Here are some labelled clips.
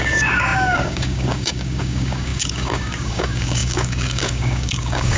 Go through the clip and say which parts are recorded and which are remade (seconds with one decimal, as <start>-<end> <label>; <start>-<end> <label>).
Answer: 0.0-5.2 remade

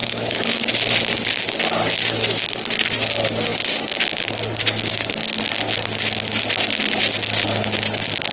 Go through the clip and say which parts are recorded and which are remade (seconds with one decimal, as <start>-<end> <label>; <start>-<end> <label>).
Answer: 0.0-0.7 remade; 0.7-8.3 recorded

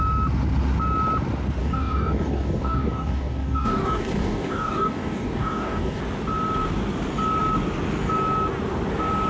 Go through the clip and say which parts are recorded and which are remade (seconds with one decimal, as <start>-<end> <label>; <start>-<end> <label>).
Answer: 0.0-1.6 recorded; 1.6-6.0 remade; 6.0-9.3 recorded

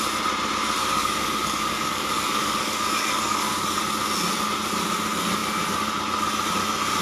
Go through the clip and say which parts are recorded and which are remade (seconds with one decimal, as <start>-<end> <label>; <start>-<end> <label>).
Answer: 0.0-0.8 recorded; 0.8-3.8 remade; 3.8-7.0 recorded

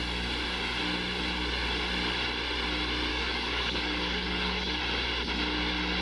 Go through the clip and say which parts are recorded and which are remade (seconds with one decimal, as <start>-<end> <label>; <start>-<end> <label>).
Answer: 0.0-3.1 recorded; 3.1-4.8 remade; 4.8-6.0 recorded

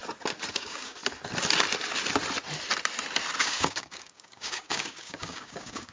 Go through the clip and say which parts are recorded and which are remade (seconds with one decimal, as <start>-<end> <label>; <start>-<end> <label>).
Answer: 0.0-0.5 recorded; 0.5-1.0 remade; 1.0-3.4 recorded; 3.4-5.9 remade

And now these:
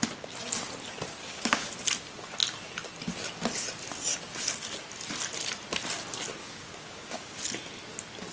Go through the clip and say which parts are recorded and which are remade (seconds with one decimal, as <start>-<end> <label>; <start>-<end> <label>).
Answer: 0.0-1.2 recorded; 1.2-1.7 remade; 1.7-6.4 recorded; 6.4-7.4 remade; 7.4-8.3 recorded